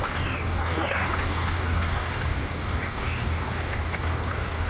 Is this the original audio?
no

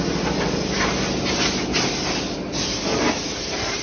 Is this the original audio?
yes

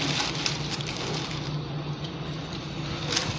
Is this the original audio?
yes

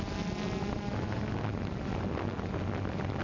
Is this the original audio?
yes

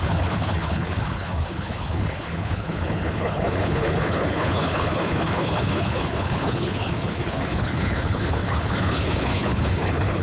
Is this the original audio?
no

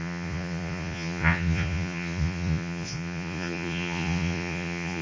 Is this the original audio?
no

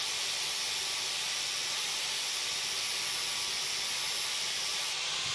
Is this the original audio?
yes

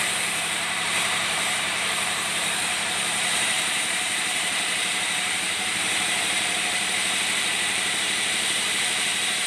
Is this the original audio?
no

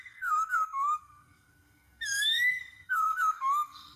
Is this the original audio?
no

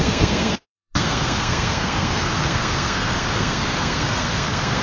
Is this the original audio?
no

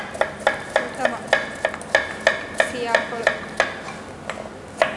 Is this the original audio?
yes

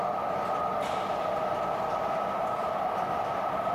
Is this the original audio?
yes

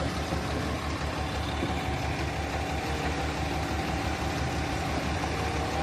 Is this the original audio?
yes